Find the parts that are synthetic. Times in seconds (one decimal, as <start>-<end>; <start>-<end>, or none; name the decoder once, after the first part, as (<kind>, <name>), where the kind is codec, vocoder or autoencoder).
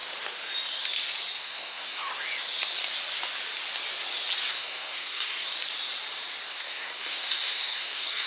1.4-2.0 (codec, SNAC); 4.5-5.5; 6.5-8.3